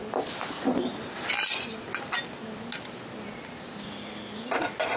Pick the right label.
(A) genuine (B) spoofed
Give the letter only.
A